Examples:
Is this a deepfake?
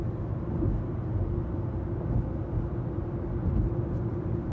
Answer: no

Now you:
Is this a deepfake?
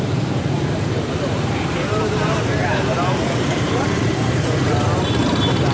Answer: yes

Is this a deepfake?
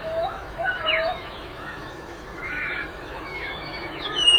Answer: yes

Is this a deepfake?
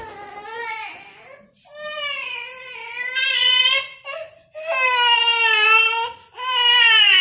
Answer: no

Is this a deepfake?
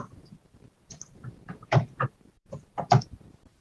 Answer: yes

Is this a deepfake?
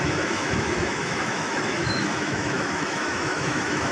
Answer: yes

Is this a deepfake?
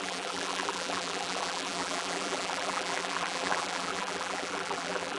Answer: yes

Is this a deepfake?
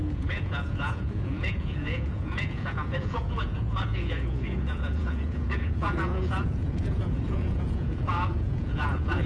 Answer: yes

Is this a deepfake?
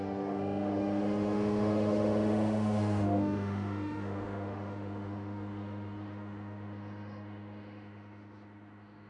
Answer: yes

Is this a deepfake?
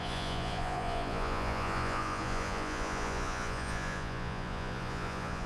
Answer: yes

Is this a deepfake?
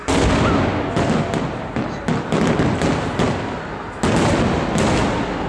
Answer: no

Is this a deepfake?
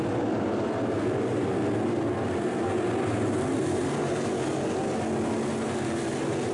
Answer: no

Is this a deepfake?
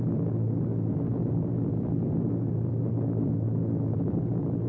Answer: no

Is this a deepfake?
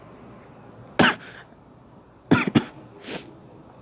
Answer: no